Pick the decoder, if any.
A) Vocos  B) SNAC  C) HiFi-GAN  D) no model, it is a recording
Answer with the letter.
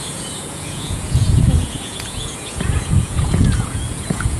A